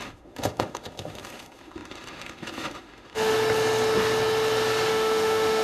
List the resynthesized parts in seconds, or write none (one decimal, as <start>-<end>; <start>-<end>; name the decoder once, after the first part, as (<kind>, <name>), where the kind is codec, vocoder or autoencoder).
0.0-3.3 (autoencoder, DAC-VAE); 4.9-5.6